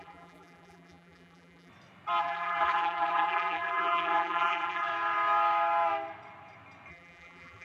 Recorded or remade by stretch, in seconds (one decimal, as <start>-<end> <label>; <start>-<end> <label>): 0.0-1.7 remade; 1.7-2.2 recorded; 2.2-4.9 remade; 4.9-6.9 recorded; 6.9-7.6 remade